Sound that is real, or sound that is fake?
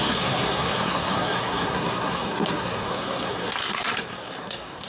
fake